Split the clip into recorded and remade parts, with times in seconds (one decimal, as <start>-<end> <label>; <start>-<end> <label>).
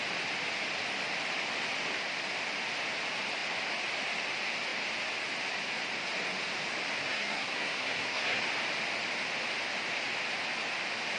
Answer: 0.0-7.0 recorded; 7.0-8.4 remade; 8.4-11.2 recorded